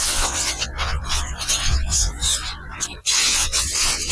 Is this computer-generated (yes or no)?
yes